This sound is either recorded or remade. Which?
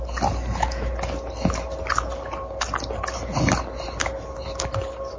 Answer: recorded